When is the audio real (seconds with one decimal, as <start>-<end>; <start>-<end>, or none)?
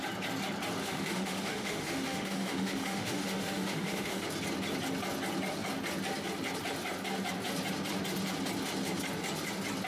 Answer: 0.0-0.8; 4.2-9.9